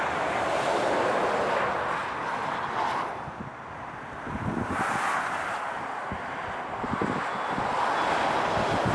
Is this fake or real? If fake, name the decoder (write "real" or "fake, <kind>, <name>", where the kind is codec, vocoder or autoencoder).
real